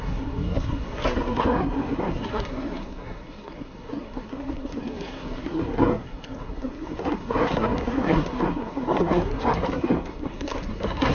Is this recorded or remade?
remade